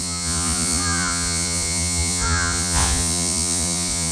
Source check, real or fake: fake